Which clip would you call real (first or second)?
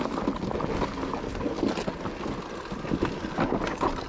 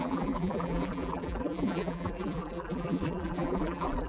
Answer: first